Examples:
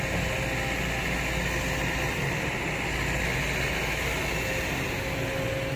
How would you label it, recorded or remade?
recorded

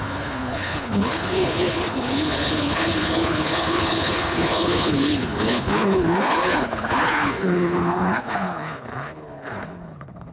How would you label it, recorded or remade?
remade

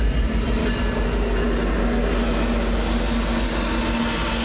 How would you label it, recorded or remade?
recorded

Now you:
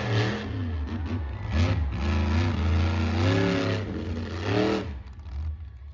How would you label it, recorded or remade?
recorded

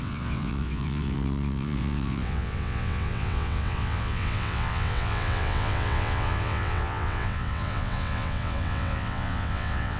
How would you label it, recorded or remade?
remade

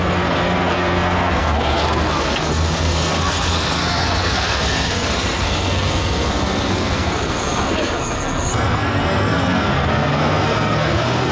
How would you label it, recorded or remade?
remade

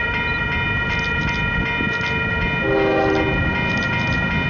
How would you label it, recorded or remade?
recorded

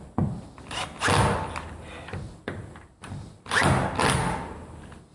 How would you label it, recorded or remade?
recorded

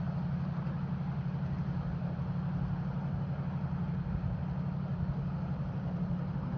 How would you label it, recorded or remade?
recorded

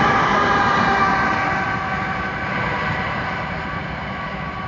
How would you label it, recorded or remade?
recorded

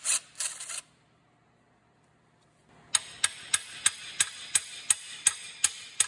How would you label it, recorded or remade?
recorded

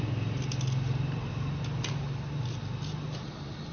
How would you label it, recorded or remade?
recorded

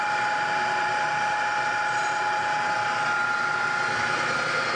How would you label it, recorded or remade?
recorded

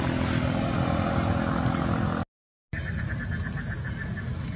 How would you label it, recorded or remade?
recorded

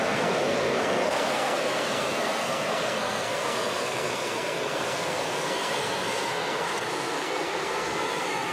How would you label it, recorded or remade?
remade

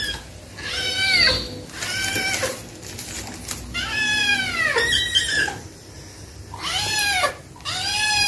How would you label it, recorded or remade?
recorded